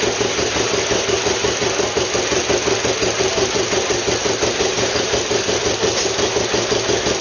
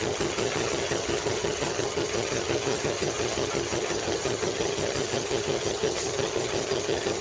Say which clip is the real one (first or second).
first